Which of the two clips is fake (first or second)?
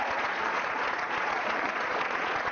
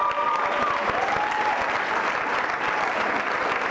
first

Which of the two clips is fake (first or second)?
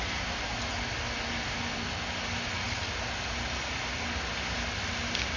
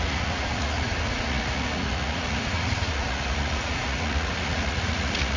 second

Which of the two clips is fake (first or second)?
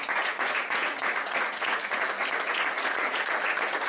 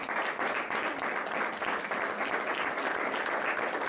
first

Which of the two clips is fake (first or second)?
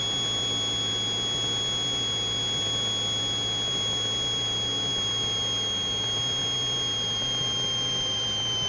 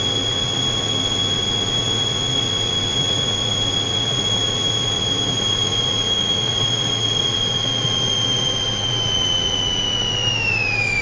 second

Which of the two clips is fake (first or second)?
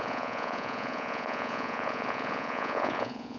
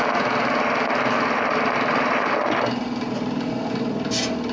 first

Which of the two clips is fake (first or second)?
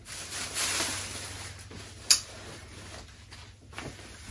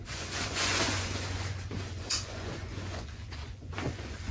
second